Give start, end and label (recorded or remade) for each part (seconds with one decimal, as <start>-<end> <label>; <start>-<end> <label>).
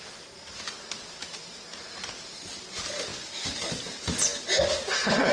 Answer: 0.0-5.3 recorded